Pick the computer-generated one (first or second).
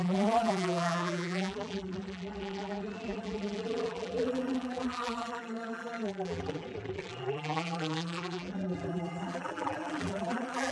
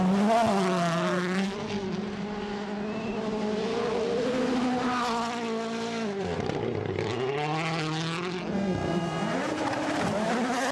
first